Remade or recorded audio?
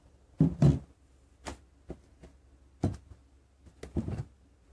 recorded